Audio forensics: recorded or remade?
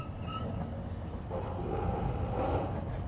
recorded